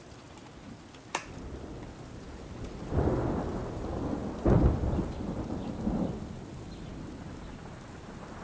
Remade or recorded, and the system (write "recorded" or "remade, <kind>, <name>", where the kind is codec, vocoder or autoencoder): recorded